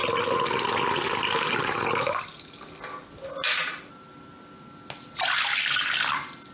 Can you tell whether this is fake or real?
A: real